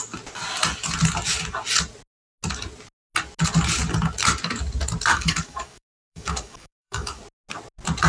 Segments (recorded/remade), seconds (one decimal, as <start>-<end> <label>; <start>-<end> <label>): 0.0-5.1 recorded; 5.1-7.2 remade; 7.2-8.1 recorded

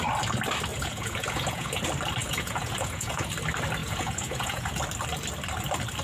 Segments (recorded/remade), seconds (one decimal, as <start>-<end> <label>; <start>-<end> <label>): 0.0-0.7 recorded; 0.7-1.8 remade; 1.8-2.2 recorded; 2.2-3.3 remade; 3.3-3.8 recorded; 3.8-4.8 remade; 4.8-6.0 recorded

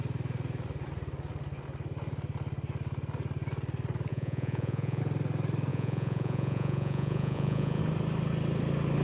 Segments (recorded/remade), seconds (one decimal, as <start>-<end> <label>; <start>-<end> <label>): 0.0-4.1 recorded; 4.1-5.0 remade; 5.0-5.7 recorded; 5.7-7.8 remade; 7.8-9.0 recorded

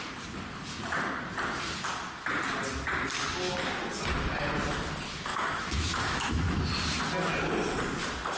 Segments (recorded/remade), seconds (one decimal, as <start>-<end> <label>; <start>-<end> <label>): 0.0-5.3 recorded; 5.3-6.6 remade; 6.6-8.4 recorded

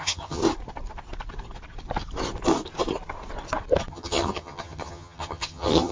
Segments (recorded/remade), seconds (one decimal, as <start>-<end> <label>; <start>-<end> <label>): 0.0-0.4 remade; 0.4-3.9 recorded; 3.9-5.9 remade

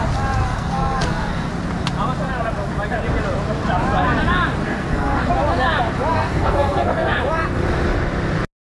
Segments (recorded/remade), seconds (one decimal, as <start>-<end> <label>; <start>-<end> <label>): 0.0-0.4 recorded; 0.4-1.5 remade; 1.5-4.6 recorded; 4.6-5.3 remade; 5.3-6.1 recorded; 6.1-7.2 remade; 7.2-8.7 recorded

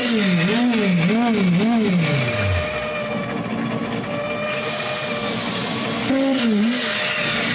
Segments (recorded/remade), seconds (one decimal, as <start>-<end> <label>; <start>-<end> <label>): 0.0-7.5 recorded